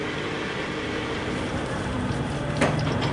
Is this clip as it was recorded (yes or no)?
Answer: yes